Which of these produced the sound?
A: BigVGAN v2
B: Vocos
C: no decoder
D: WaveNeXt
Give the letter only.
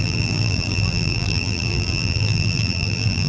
A